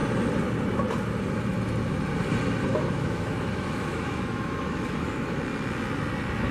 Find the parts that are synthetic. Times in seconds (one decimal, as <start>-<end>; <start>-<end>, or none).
2.7-5.4